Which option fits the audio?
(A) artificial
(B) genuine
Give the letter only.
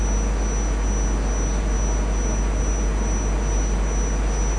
B